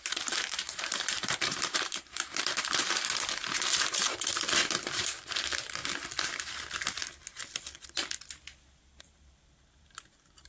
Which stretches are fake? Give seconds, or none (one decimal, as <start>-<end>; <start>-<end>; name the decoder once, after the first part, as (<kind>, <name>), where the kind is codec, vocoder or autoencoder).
0.0-5.8 (vocoder, BigVGAN v2); 9.0-10.5